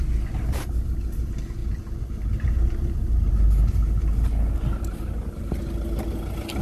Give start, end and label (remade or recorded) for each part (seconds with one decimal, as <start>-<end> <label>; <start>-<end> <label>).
0.0-6.6 recorded